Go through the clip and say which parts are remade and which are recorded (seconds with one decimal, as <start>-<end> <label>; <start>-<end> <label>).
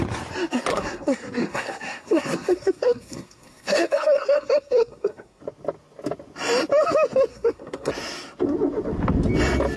0.0-0.7 recorded; 0.7-5.4 remade; 5.4-7.3 recorded; 7.3-7.9 remade; 7.9-9.8 recorded